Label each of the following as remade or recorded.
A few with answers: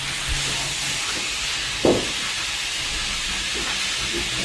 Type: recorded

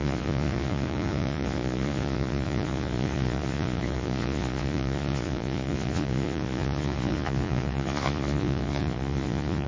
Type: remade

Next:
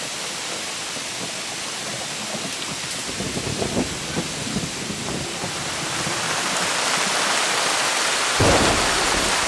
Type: remade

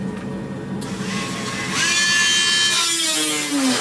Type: recorded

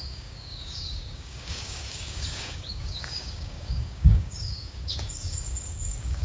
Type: remade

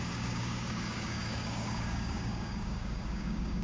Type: remade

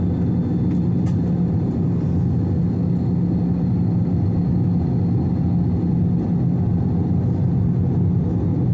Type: recorded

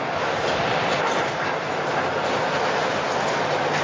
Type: recorded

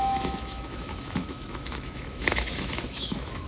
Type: remade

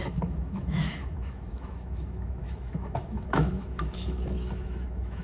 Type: remade